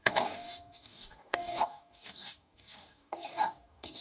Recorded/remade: remade